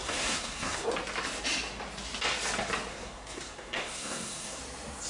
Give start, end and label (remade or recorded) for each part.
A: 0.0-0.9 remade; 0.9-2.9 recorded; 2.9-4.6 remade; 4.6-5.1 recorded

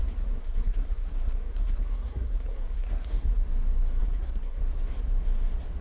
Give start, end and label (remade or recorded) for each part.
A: 0.0-0.4 recorded; 0.4-3.3 remade; 3.3-4.0 recorded; 4.0-4.6 remade; 4.6-5.8 recorded

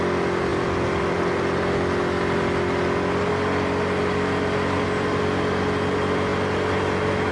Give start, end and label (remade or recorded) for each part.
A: 0.0-7.3 recorded

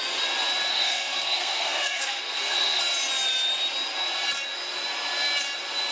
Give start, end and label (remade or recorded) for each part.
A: 0.0-0.7 recorded; 0.7-2.8 remade; 2.8-5.9 recorded

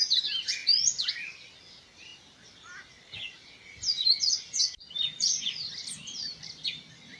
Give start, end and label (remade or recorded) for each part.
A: 0.0-7.2 recorded

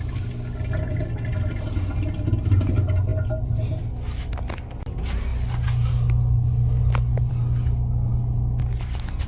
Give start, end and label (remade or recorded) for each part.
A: 0.0-9.3 recorded

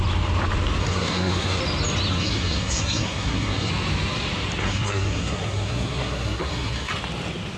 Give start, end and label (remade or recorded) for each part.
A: 0.0-0.8 recorded; 0.8-1.6 remade; 1.6-2.1 recorded; 2.1-3.7 remade; 3.7-4.6 recorded; 4.6-6.9 remade; 6.9-7.6 recorded